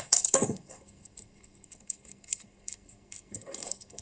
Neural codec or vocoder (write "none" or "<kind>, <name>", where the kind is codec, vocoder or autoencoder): codec, SNAC